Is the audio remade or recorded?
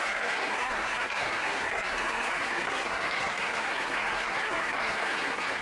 remade